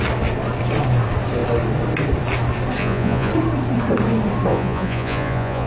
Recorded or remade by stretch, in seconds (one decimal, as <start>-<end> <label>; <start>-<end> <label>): 0.0-2.8 recorded; 2.8-3.3 remade; 3.3-4.5 recorded; 4.5-5.7 remade